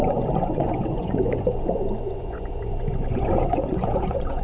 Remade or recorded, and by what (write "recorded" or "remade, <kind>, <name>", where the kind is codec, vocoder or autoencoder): remade, vocoder, Vocos